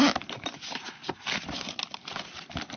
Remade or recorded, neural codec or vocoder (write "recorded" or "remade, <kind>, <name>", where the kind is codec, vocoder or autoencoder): recorded